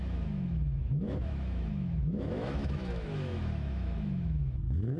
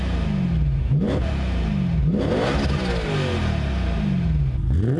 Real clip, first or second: second